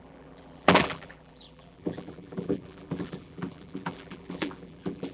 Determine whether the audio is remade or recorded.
remade